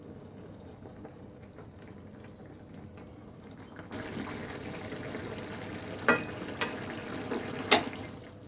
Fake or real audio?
real